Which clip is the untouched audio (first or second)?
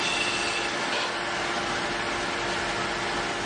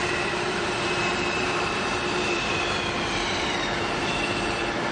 first